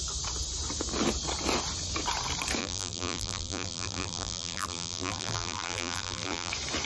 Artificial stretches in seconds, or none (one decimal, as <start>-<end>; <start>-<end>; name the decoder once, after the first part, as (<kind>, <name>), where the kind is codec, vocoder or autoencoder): 2.6-6.5 (vocoder, BigVGAN v2)